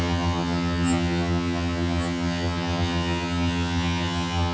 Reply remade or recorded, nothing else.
remade